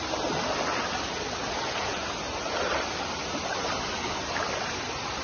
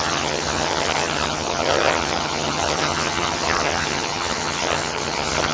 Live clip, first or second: first